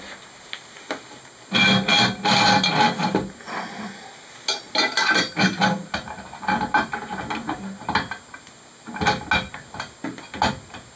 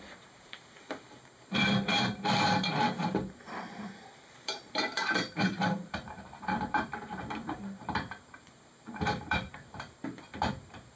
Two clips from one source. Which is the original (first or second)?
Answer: first